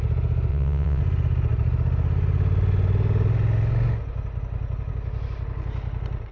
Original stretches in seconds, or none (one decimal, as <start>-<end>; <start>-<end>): 0.0-0.5; 1.0-6.3